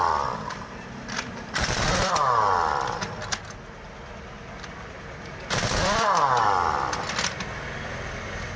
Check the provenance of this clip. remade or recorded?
recorded